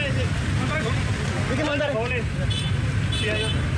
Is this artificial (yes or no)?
no